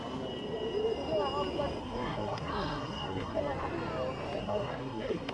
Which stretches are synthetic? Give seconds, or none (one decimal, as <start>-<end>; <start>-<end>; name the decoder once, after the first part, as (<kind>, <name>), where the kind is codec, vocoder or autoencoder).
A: 1.8-3.4 (codec, SNAC); 4.4-5.3